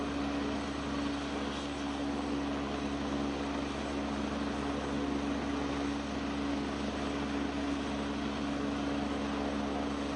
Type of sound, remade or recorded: recorded